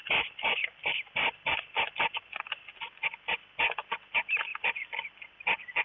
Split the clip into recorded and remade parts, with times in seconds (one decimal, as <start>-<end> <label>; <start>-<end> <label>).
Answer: 0.0-4.5 recorded; 4.5-5.1 remade; 5.1-5.8 recorded